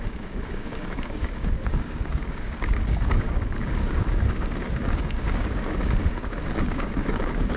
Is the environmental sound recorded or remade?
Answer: remade